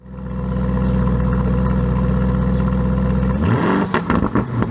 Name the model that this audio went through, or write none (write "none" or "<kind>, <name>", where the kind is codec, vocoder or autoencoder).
none